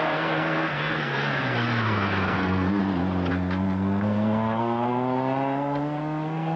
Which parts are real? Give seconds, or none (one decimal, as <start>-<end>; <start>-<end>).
2.8-3.3